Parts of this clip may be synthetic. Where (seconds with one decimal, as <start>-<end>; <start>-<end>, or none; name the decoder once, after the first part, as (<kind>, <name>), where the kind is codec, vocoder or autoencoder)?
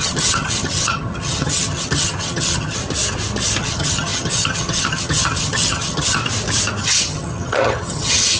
0.0-2.8 (vocoder, HiFi-GAN); 3.6-6.2; 6.8-8.4